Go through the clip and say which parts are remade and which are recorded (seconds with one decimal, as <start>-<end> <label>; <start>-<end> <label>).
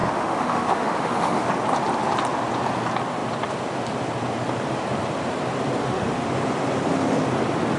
0.0-1.5 remade; 1.5-5.8 recorded; 5.8-6.3 remade; 6.3-7.8 recorded